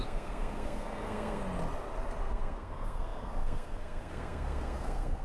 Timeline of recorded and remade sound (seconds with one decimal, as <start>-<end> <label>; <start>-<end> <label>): 0.0-1.4 remade; 1.4-2.2 recorded; 2.2-5.2 remade